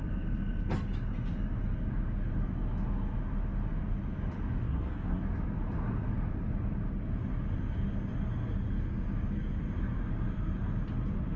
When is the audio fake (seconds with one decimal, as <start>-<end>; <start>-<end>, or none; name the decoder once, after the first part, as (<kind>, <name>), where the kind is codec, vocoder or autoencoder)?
4.6-5.2 (codec, SNAC)